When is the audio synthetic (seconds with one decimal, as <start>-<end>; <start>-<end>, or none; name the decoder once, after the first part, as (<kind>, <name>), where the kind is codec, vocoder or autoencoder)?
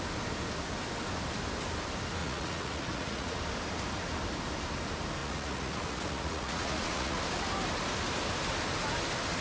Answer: 2.2-3.4 (vocoder, Vocos); 5.2-7.2